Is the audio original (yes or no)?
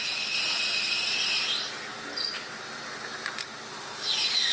yes